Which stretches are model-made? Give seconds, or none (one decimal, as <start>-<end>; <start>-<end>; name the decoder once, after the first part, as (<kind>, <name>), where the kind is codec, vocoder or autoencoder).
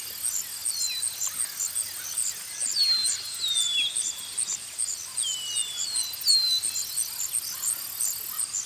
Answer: none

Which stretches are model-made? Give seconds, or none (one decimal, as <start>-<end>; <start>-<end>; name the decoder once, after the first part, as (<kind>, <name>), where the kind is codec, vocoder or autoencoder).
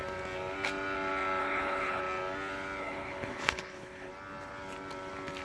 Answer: 1.4-2.0 (codec, HILCodec); 2.8-4.1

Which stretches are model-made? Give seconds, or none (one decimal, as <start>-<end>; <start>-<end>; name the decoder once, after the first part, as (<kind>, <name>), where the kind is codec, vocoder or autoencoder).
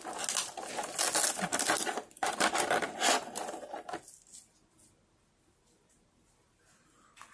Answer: 1.5-2.5 (vocoder, BigVGAN v2)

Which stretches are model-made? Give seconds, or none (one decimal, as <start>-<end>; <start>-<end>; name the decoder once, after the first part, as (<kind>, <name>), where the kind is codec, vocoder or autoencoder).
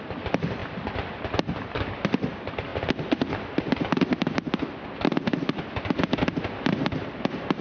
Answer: none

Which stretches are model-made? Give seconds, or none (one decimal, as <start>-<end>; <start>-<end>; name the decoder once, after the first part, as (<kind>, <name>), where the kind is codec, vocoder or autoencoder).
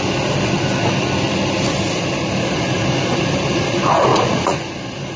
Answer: 4.1-4.7 (vocoder, Vocos)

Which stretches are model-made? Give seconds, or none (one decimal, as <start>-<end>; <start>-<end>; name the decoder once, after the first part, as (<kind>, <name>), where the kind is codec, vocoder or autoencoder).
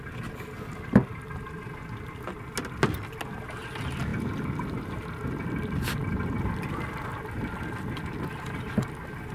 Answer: none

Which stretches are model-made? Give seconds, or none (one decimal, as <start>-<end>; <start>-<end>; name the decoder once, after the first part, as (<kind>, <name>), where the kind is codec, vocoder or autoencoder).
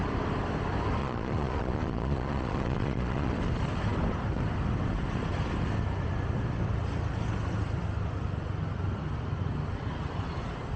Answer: 1.0-3.3 (vocoder, Vocos)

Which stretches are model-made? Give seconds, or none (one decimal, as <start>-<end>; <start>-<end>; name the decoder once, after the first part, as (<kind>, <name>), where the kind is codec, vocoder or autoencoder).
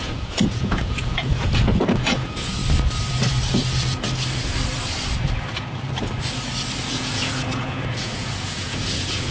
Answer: 0.0-2.6 (vocoder, Vocos); 6.9-9.3